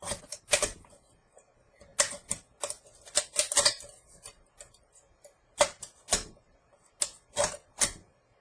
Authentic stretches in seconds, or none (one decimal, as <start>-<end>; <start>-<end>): 0.0-8.4